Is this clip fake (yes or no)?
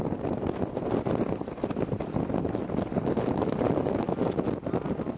no